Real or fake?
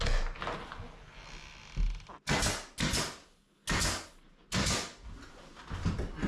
real